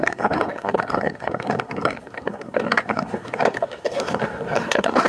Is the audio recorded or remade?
remade